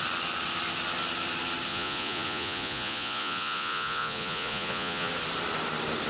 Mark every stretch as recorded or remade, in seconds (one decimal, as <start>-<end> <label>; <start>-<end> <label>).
0.0-1.7 recorded; 1.7-5.1 remade; 5.1-6.1 recorded